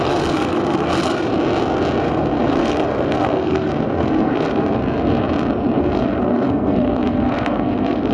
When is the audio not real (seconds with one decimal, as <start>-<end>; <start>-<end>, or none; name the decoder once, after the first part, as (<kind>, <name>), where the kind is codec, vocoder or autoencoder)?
0.0-1.3 (codec, SNAC); 2.0-4.8; 5.8-8.1